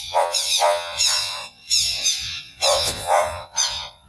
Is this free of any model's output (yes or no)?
no